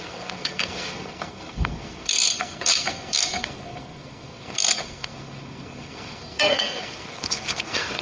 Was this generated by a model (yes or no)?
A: yes